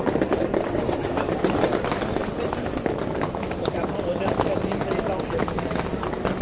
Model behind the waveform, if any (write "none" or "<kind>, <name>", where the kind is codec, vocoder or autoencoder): none